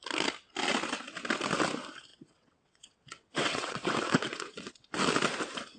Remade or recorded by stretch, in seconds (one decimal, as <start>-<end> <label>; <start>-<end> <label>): 0.0-2.1 recorded; 2.1-4.7 remade; 4.7-5.8 recorded